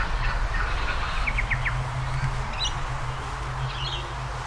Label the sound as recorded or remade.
recorded